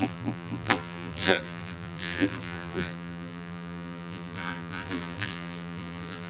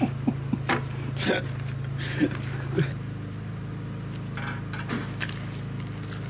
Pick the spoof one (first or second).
first